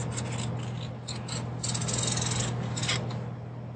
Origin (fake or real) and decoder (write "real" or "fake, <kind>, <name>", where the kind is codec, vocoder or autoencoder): real